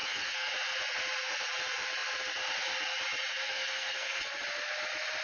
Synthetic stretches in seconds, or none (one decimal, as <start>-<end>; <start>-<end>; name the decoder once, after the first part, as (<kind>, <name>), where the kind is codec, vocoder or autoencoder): 0.0-0.5 (codec, SNAC); 3.3-4.2